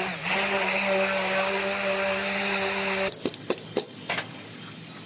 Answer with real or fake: real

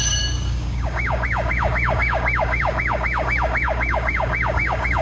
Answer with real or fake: fake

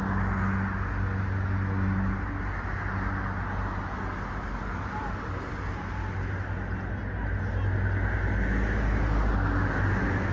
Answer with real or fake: real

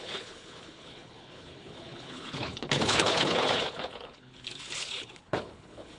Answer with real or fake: fake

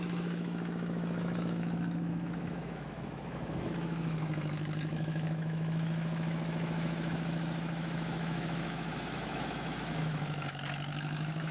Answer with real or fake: fake